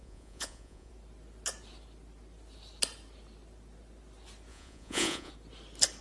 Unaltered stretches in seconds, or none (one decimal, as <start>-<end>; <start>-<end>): 0.9-4.5; 5.3-6.0